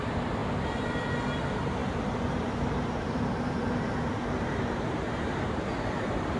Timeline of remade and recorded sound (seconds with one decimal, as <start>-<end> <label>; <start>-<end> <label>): 0.0-0.4 remade; 0.4-1.4 recorded; 1.4-1.8 remade; 1.8-2.4 recorded; 2.4-6.4 remade